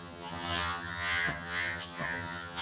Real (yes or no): no